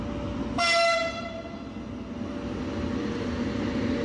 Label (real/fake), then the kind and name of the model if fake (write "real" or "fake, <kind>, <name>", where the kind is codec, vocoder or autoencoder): real